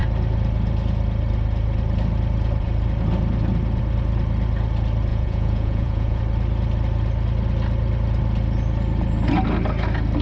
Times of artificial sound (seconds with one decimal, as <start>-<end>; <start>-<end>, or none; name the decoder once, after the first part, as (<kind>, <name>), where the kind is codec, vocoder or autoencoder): 5.1-6.2 (vocoder, Vocos)